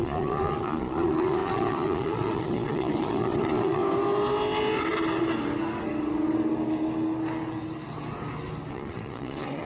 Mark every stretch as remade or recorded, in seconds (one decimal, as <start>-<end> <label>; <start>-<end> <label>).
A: 0.0-3.8 remade; 3.8-8.7 recorded; 8.7-9.6 remade